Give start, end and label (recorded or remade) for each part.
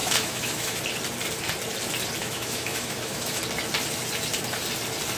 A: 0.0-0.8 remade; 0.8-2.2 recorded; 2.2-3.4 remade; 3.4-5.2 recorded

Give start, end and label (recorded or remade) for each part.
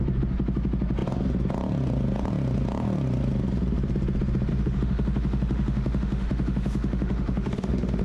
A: 0.0-4.5 recorded; 4.5-8.0 remade